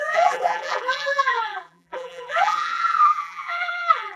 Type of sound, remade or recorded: remade